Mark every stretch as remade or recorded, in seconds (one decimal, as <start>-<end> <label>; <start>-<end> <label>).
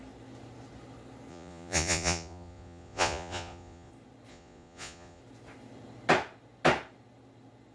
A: 0.0-1.3 recorded; 1.3-3.9 remade; 3.9-4.3 recorded; 4.3-5.2 remade; 5.2-7.7 recorded